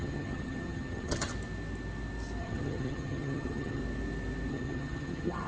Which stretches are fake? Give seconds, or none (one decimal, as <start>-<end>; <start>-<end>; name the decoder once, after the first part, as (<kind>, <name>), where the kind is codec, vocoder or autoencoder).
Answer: 0.0-1.3 (vocoder, HiFi-GAN); 2.4-3.8; 4.5-5.5